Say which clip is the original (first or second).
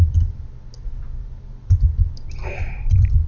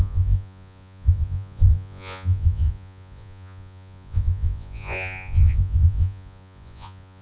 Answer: first